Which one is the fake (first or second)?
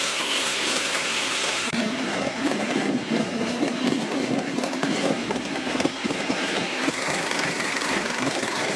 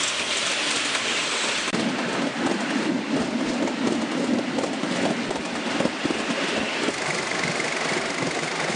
first